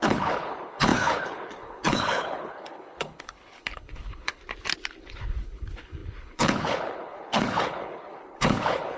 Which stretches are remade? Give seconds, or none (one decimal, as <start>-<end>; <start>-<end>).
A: 0.0-4.4; 5.0-9.0